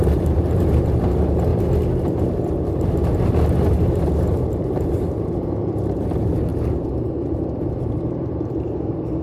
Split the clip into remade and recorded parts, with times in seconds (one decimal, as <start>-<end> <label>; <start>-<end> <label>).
0.0-1.5 remade; 1.5-4.3 recorded; 4.3-9.2 remade